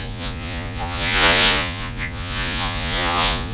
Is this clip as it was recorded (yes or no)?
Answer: no